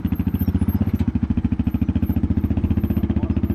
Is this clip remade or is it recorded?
recorded